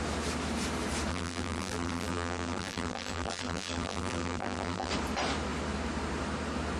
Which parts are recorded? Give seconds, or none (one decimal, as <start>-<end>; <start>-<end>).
0.0-1.1; 4.9-6.8